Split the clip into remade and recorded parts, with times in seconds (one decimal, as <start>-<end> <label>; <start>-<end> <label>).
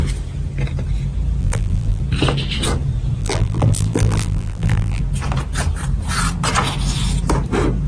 0.0-1.4 recorded; 1.4-2.0 remade; 2.0-3.2 recorded; 3.2-5.0 remade; 5.0-7.9 recorded